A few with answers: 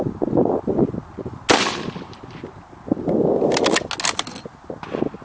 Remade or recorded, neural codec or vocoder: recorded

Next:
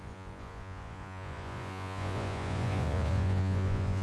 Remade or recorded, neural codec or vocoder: remade, vocoder, Vocos